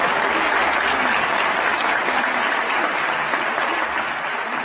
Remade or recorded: recorded